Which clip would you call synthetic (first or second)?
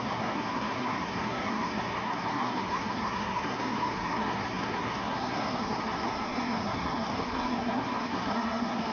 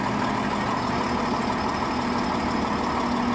first